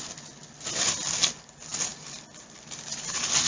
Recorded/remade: recorded